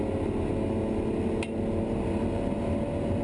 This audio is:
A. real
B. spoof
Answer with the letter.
A